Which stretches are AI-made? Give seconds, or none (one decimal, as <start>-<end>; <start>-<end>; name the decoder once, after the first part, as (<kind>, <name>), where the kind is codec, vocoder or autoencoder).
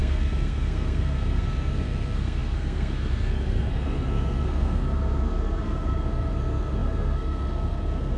0.0-8.2 (codec, SNAC)